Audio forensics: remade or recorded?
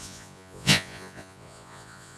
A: remade